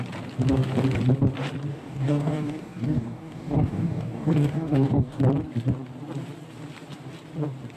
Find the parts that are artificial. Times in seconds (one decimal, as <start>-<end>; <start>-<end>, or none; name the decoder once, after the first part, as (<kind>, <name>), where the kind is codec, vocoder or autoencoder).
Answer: 1.7-5.2 (codec, DAC)